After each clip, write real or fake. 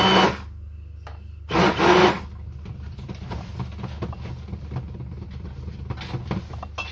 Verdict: real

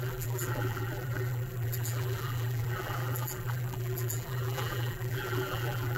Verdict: fake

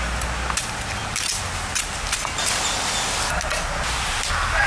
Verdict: real